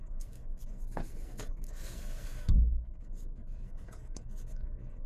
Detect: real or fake fake